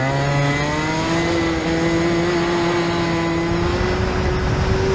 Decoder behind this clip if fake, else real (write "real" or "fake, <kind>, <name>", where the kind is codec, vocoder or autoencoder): real